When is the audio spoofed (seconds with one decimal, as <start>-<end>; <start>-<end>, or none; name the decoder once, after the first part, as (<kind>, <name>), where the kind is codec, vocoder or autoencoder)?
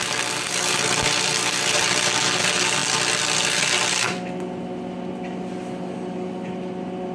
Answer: none